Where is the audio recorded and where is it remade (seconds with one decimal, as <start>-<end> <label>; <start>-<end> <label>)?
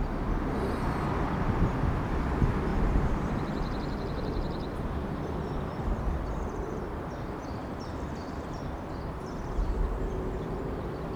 0.0-2.7 recorded; 2.7-7.0 remade; 7.0-7.6 recorded; 7.6-9.7 remade; 9.7-11.2 recorded